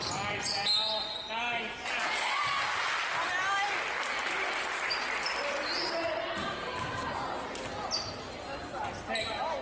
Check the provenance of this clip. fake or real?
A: real